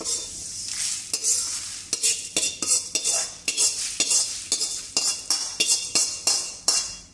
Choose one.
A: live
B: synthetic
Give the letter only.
A